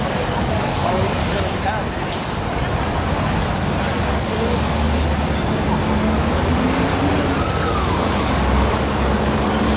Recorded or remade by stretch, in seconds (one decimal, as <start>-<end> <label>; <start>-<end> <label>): 0.0-1.2 remade; 1.2-6.3 recorded; 6.3-6.9 remade; 6.9-7.4 recorded; 7.4-9.8 remade

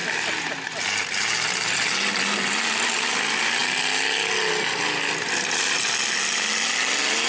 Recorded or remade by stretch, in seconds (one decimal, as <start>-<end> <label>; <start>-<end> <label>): 0.0-7.3 recorded

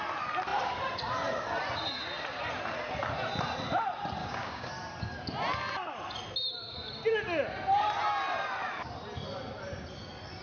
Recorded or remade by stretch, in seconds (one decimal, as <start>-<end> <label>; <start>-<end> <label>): 0.0-4.2 recorded; 4.2-4.7 remade; 4.7-10.4 recorded

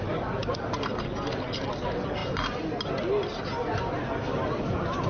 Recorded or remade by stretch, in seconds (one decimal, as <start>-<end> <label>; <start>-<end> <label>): 0.0-5.1 recorded